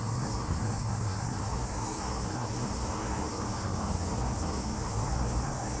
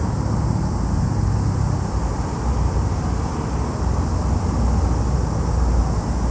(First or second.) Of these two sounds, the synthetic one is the first